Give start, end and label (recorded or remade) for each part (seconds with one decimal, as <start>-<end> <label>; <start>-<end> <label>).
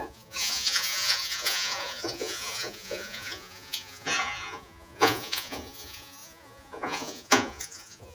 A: 0.0-8.1 remade